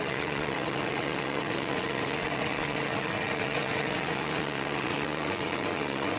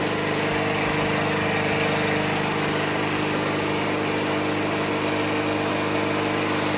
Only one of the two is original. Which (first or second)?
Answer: second